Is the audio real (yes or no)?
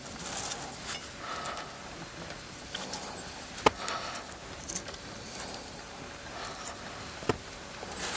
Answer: no